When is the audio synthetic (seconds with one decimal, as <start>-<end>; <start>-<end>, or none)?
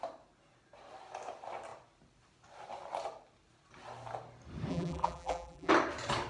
4.7-5.7